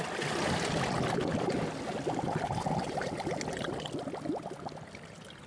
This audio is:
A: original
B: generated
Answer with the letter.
A